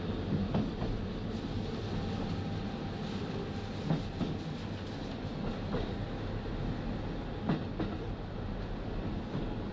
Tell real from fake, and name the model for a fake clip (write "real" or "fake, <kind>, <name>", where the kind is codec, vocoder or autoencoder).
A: real